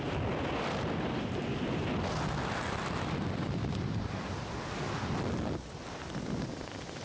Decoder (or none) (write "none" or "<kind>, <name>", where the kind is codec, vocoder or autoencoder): none